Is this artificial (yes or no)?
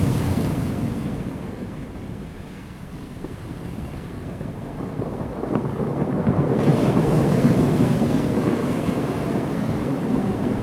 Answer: yes